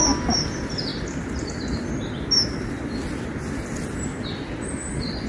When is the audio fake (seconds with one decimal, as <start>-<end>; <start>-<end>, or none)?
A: none